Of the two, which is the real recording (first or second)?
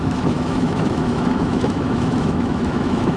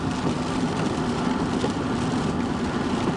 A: second